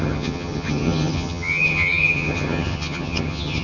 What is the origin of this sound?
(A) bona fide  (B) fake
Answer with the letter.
B